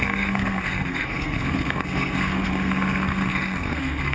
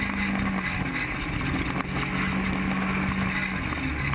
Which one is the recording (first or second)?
second